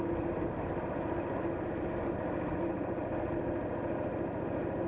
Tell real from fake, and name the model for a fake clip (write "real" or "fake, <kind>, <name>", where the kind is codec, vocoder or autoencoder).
real